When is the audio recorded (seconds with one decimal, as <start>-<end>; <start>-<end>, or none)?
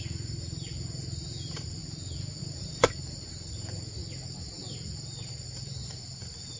1.8-2.4; 4.0-5.2